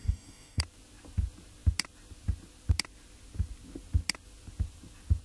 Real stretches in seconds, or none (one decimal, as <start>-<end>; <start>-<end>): 0.6-5.2